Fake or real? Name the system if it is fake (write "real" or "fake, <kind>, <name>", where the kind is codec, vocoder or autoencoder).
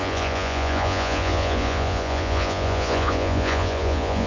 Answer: fake, vocoder, Vocos